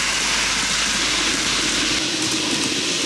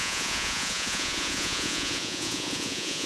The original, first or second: first